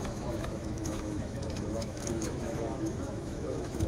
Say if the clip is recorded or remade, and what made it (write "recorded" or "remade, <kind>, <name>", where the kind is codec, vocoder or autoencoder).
remade, autoencoder, DAC-VAE